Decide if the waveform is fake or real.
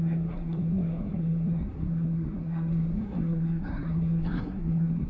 fake